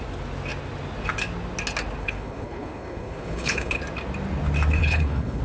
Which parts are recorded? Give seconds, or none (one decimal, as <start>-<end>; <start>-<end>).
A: 0.0-2.0; 3.8-4.8